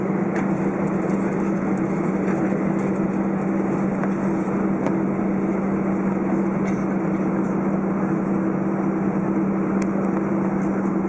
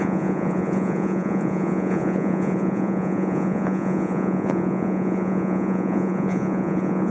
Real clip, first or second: first